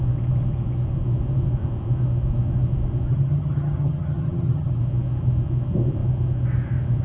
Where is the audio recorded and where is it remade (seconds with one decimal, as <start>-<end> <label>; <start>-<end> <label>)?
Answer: 0.0-3.1 recorded; 3.1-4.8 remade; 4.8-7.0 recorded